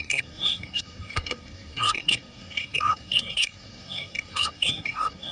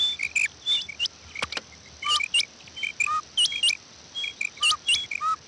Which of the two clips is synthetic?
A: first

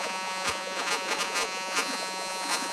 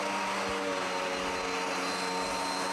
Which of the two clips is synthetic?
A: first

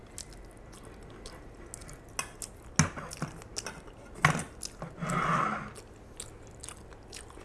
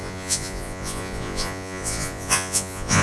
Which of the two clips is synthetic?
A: second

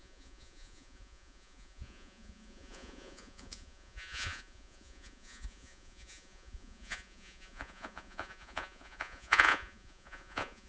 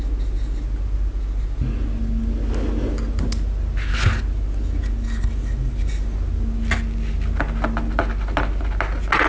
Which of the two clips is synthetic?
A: first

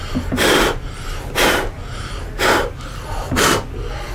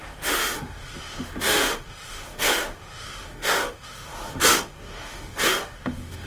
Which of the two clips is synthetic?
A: second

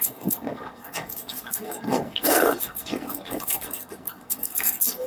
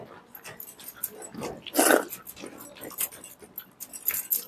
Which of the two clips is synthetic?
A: first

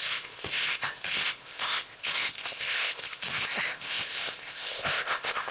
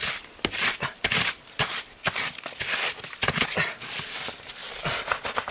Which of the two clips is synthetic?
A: first